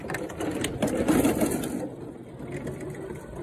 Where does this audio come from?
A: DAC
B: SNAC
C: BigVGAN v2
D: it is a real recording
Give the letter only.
D